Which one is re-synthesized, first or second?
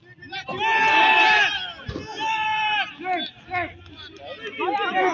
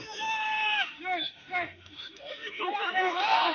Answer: second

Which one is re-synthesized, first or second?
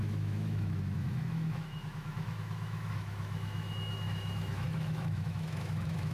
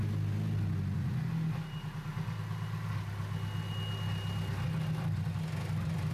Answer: first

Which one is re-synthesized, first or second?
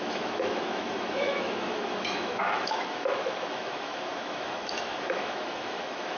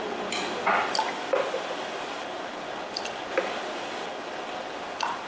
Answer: first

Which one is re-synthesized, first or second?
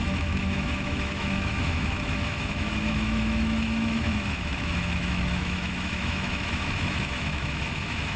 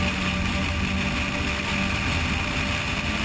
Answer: first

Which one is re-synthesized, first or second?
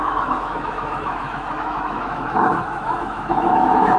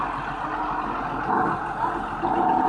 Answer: first